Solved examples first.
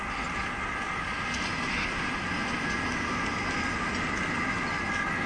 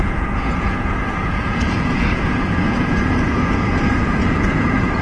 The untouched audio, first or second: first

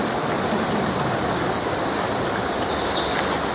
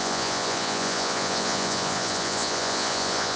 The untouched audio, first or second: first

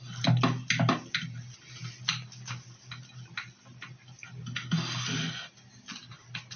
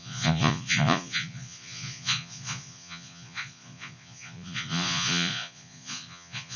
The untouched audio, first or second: first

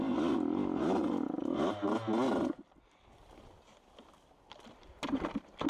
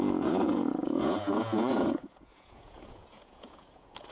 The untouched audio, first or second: first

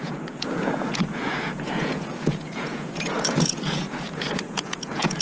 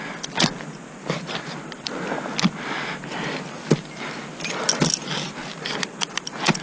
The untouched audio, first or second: second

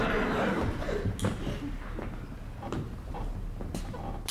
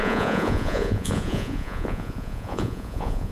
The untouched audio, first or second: first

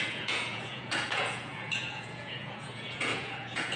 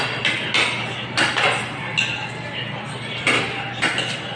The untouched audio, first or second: second